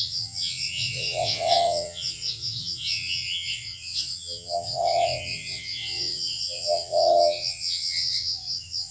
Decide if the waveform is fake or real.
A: fake